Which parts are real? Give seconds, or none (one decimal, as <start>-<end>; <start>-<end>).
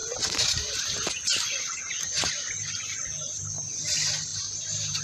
2.3-4.3